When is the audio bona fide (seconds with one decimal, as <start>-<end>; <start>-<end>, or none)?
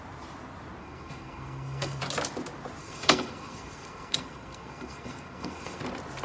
0.0-0.8; 2.0-2.8; 5.8-6.2